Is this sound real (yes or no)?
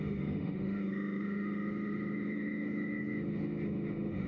no